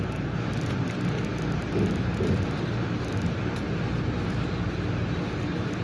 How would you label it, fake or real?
real